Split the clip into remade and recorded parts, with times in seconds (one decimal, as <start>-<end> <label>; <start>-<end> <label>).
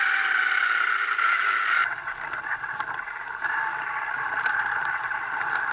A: 0.0-0.4 recorded; 0.4-0.9 remade; 0.9-5.7 recorded